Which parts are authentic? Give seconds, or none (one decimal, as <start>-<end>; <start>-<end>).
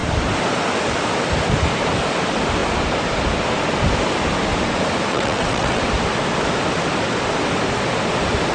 0.0-5.1; 5.8-8.5